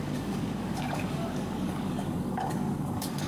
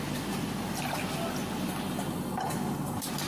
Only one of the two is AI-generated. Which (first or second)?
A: first